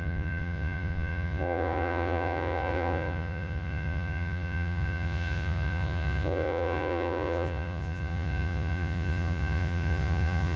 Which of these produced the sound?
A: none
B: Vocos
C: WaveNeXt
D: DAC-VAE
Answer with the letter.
B